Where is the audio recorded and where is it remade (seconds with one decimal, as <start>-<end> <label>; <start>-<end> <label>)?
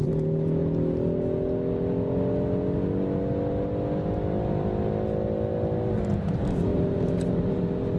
0.0-6.7 recorded; 6.7-7.6 remade; 7.6-8.0 recorded